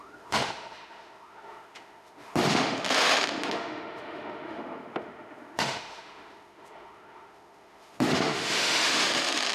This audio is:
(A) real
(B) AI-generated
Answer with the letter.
B